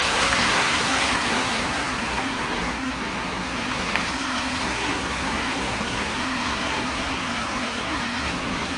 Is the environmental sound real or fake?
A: fake